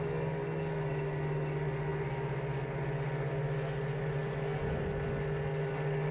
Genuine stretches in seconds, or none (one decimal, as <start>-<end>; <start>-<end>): 0.0-6.1